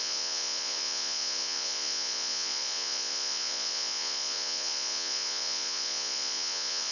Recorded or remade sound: remade